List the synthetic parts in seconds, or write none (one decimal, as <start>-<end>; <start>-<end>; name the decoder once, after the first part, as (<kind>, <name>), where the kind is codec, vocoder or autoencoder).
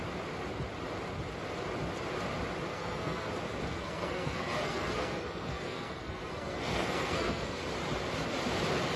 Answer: 2.7-3.3 (codec, SNAC); 3.7-7.6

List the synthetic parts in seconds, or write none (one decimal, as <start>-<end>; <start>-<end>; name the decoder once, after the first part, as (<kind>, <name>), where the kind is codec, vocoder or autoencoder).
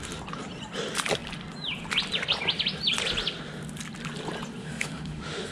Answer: 4.6-5.5 (autoencoder, DAC-VAE)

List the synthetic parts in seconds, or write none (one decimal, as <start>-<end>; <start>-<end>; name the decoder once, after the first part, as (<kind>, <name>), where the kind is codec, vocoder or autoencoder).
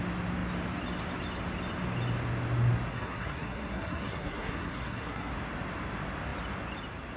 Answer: 2.9-5.3 (codec, SNAC)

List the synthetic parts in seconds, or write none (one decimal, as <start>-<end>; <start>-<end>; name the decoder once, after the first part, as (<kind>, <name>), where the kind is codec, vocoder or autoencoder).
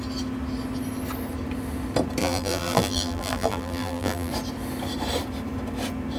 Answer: 2.2-4.3 (vocoder, BigVGAN v2)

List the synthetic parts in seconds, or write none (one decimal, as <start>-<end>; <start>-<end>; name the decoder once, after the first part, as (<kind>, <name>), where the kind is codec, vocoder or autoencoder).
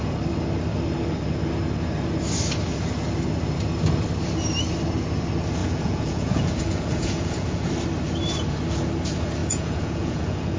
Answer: 5.6-7.7 (vocoder, Vocos); 9.4-10.6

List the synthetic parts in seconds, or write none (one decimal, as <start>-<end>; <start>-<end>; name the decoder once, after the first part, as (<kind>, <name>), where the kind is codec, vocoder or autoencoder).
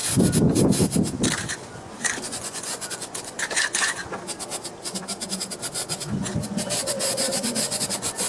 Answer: 1.5-4.0 (vocoder, Vocos); 4.8-8.3